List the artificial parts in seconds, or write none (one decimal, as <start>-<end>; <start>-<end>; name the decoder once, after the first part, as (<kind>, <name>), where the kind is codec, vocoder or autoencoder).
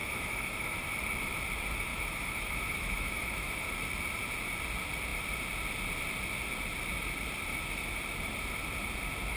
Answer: 0.0-0.8 (autoencoder, DAC-VAE); 1.9-3.7